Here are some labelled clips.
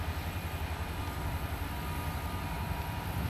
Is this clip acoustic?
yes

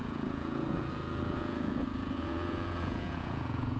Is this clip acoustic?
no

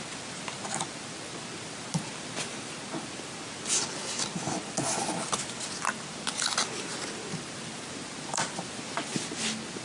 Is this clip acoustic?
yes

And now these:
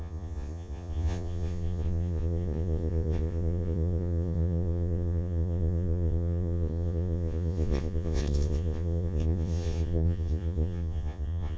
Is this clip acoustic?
no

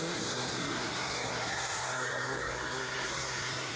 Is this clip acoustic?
no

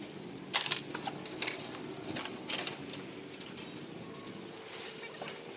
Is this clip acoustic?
yes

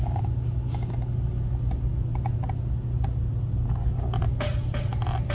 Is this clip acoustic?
yes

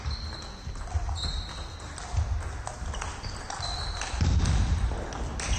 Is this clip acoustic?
yes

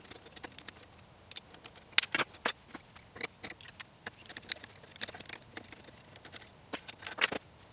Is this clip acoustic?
yes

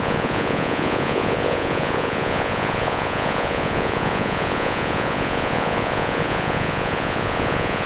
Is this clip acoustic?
no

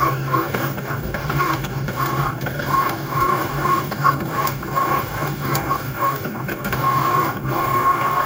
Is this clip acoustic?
no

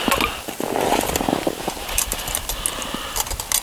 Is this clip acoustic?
yes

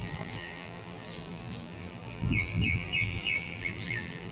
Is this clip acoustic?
no